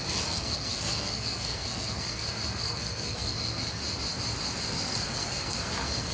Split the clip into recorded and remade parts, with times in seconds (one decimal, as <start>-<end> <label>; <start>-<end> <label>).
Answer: 0.0-3.8 remade; 3.8-4.7 recorded; 4.7-6.1 remade